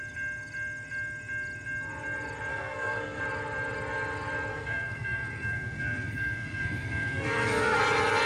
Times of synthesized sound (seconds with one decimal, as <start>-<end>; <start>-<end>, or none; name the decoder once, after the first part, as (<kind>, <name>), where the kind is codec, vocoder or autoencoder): 2.5-3.2 (codec, SNAC); 4.5-7.8